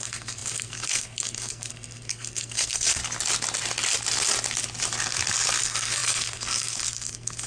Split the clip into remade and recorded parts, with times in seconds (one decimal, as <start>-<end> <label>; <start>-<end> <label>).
0.0-3.0 remade; 3.0-5.6 recorded; 5.6-7.5 remade